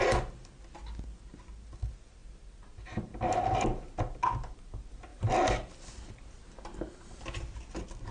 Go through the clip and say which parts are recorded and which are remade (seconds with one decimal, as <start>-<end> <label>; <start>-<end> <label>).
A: 0.0-2.2 recorded; 2.2-3.9 remade; 3.9-5.1 recorded; 5.1-5.9 remade; 5.9-6.4 recorded; 6.4-7.4 remade; 7.4-8.1 recorded